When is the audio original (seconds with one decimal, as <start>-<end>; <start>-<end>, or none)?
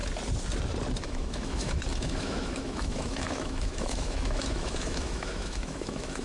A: 0.0-1.0